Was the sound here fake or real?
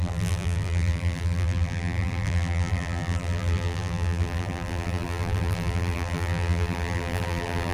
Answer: fake